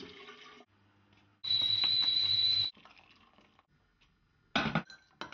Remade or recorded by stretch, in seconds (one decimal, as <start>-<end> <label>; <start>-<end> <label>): 0.0-5.3 recorded